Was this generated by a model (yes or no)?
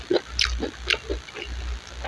no